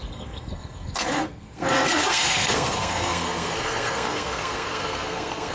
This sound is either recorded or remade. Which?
remade